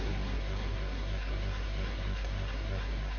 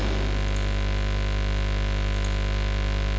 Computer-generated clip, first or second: first